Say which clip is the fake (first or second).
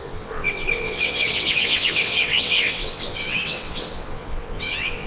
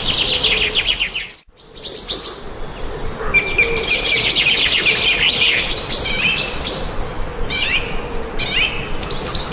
first